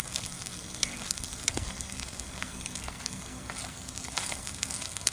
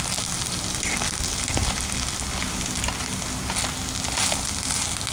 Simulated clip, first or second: first